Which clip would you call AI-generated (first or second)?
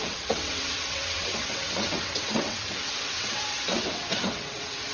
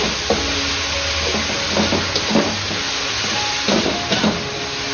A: first